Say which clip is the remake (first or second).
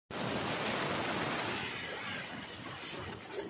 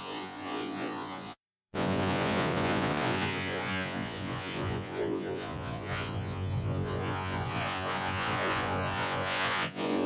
second